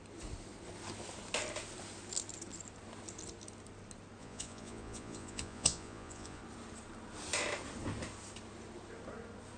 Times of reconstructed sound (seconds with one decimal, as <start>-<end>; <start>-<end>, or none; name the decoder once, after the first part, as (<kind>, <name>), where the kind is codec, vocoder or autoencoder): 4.2-6.4 (vocoder, Vocos)